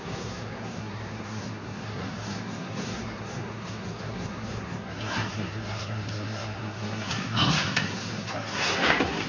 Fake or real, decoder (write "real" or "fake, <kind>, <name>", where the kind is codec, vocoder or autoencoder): fake, codec, SNAC